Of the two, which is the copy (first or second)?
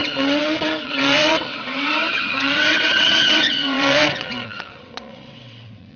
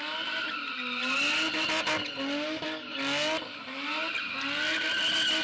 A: first